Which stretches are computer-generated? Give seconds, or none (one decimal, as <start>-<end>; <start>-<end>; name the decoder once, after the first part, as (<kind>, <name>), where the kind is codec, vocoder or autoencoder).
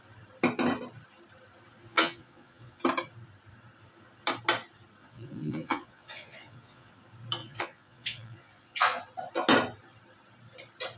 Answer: 1.9-2.8 (vocoder, Vocos); 5.0-6.9; 7.4-9.0